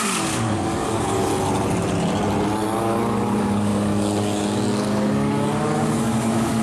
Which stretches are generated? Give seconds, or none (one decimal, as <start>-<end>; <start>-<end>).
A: 0.0-1.3; 2.8-6.6